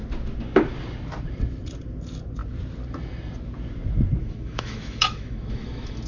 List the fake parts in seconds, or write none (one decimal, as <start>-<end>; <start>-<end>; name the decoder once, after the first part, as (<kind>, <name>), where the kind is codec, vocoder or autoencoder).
4.2-6.1 (autoencoder, DAC-VAE)